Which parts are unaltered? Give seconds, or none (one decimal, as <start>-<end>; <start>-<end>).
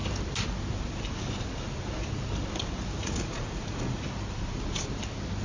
0.0-3.0; 4.0-5.4